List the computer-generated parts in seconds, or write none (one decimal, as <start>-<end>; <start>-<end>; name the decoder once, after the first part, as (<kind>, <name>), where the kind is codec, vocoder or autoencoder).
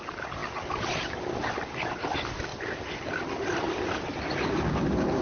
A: none